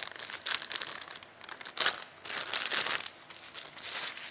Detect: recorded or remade recorded